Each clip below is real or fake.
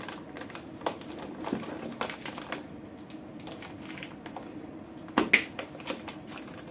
real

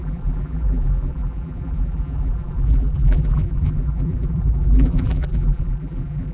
fake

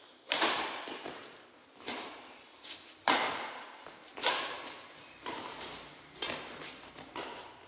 fake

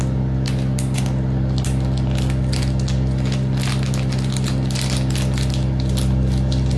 real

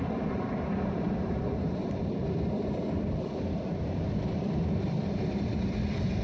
fake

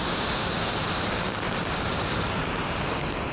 fake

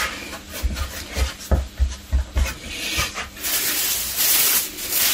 real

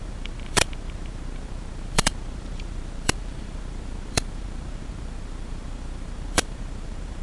fake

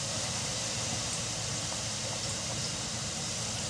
fake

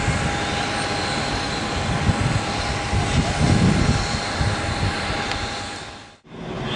real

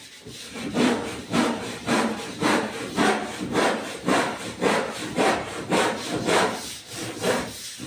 fake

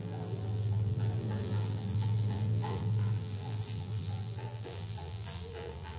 fake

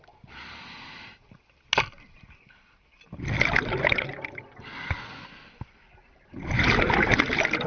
real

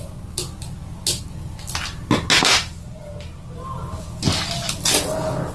real